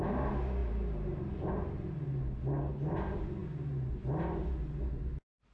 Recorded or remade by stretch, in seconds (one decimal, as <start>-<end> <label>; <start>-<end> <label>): 0.0-0.6 recorded; 0.6-2.1 remade; 2.1-5.5 recorded